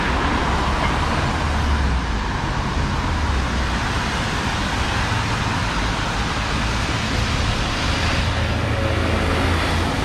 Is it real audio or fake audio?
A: real